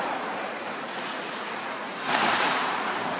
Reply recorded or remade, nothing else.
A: remade